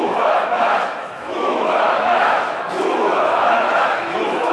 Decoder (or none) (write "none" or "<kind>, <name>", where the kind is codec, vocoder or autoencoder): autoencoder, DAC-VAE